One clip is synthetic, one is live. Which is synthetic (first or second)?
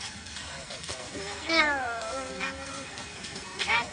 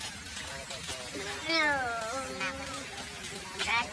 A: first